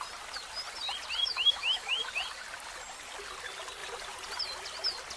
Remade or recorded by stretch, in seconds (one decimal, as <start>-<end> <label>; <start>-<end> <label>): 0.0-1.2 recorded; 1.2-2.1 remade; 2.1-5.2 recorded